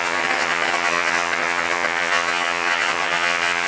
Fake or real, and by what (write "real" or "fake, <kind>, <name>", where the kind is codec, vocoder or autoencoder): fake, vocoder, HiFi-GAN